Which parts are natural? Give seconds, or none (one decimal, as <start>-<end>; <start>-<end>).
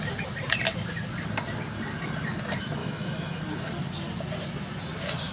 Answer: 0.0-2.8; 3.4-5.3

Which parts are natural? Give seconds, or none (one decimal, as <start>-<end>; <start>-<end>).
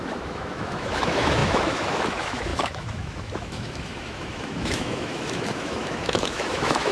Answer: none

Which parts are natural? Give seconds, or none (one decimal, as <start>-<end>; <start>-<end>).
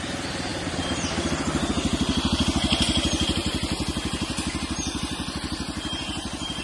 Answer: 0.0-6.6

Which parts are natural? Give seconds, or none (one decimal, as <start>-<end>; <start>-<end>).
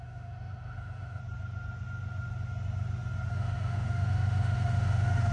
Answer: 1.2-3.3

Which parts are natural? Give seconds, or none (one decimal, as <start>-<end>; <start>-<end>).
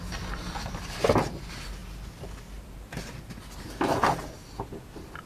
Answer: 0.0-5.3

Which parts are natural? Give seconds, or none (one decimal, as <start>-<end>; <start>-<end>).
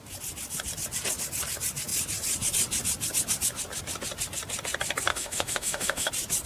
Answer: 0.0-5.1; 6.1-6.5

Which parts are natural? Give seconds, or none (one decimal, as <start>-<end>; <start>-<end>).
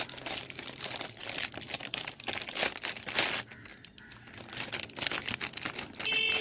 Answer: 0.0-6.4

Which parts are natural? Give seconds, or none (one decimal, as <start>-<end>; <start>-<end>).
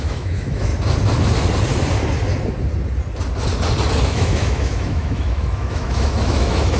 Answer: 0.7-4.0